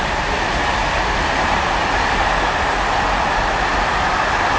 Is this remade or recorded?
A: recorded